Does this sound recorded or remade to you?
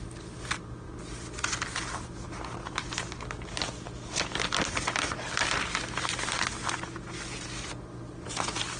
recorded